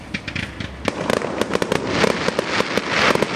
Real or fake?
real